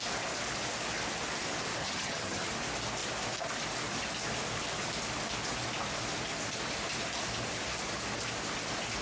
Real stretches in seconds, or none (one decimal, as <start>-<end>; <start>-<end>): 0.0-1.8; 2.5-9.0